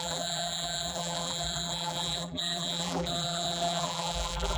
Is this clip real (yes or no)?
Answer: no